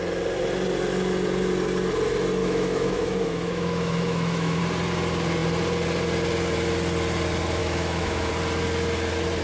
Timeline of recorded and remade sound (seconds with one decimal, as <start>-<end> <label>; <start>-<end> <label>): 0.0-2.4 recorded; 2.4-4.6 remade; 4.6-7.6 recorded; 7.6-8.3 remade; 8.3-9.4 recorded